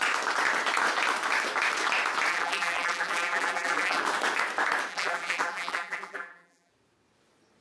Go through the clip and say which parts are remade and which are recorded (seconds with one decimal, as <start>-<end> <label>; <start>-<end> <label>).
0.0-2.3 recorded; 2.3-4.0 remade; 4.0-4.9 recorded; 4.9-6.7 remade; 6.7-7.6 recorded